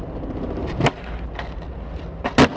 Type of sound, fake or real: real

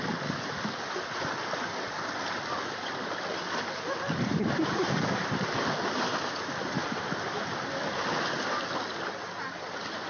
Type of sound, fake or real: real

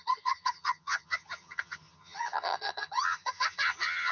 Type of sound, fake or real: fake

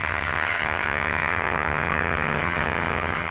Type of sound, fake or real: fake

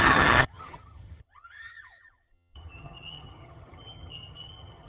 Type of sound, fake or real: fake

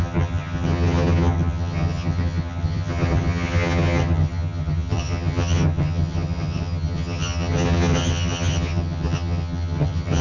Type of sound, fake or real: fake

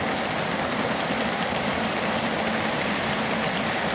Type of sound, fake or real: real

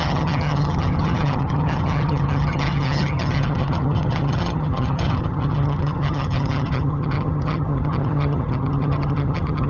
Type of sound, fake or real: fake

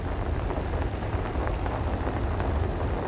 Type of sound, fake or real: real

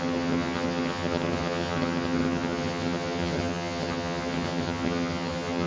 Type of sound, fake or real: fake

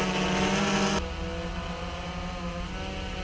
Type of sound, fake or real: real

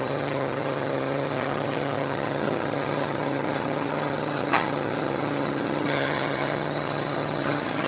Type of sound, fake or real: fake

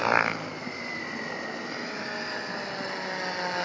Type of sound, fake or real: real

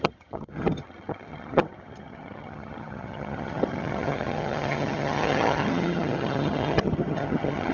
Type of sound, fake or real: fake